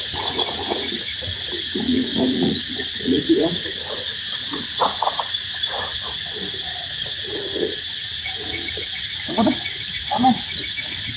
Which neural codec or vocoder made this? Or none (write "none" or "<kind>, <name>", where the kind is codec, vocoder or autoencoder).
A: vocoder, Vocos